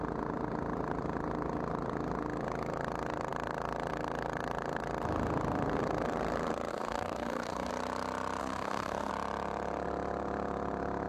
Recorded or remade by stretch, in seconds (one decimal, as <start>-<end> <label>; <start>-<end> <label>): 0.0-6.7 recorded; 6.7-7.7 remade; 7.7-8.4 recorded; 8.4-9.1 remade; 9.1-11.1 recorded